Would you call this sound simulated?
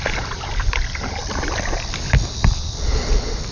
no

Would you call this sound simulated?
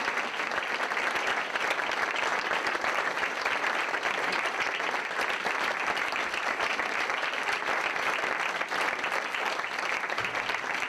yes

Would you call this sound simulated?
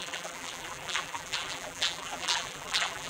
yes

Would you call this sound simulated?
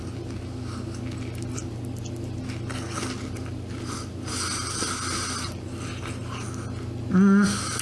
no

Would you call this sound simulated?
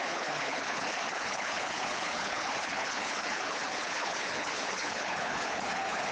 yes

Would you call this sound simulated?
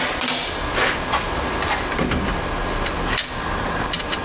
no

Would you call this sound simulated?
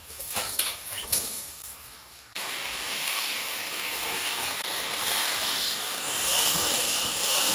yes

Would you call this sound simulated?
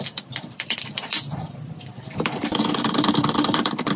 yes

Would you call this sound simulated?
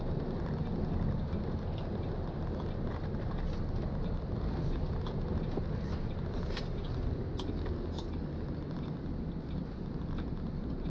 no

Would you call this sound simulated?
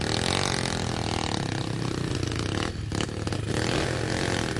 no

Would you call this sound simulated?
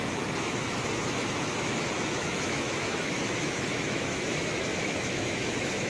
yes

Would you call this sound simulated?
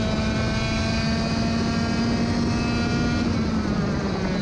no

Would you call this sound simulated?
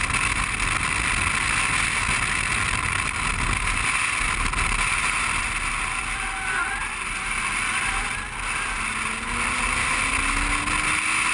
no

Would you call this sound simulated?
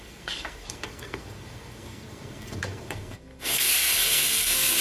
yes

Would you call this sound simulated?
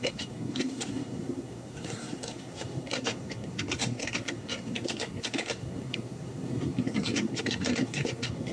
yes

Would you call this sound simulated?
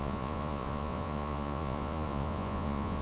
yes